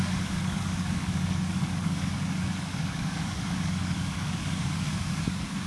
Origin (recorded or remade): remade